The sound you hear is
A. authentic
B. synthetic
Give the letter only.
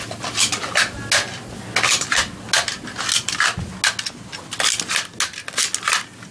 A